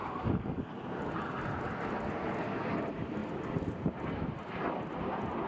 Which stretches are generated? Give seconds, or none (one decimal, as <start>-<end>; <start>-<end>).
0.0-0.7